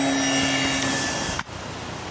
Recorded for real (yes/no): yes